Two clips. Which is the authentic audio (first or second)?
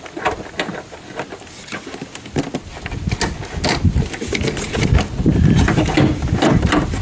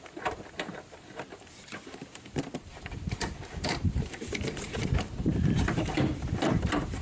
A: first